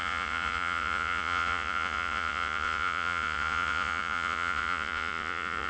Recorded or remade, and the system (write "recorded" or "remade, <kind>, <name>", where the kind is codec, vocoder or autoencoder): remade, vocoder, Vocos